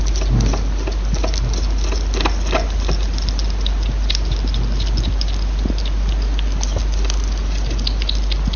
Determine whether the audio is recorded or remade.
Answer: recorded